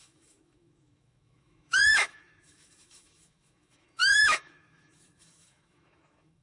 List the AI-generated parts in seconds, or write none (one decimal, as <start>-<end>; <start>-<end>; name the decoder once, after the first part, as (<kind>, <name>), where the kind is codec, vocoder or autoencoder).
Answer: 0.0-6.4 (autoencoder, DAC-VAE)